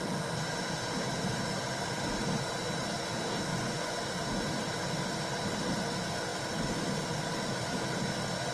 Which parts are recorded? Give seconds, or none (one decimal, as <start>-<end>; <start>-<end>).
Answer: 0.0-3.5; 4.0-8.5